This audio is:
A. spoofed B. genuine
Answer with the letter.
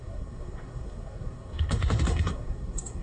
A